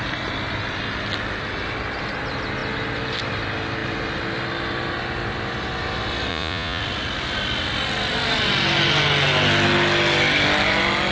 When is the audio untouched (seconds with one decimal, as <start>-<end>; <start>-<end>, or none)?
0.0-6.3; 6.8-11.1

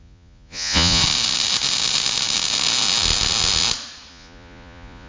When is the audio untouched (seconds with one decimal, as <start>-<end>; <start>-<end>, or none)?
1.0-4.1

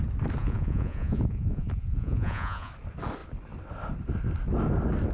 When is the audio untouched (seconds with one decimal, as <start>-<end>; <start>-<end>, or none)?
0.0-0.4; 2.7-5.1

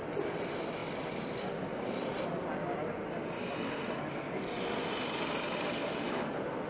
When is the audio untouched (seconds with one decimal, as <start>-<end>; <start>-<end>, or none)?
0.0-6.7

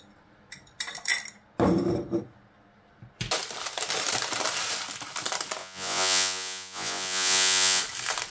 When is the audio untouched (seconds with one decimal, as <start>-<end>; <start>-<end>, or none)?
0.0-5.6; 7.8-8.3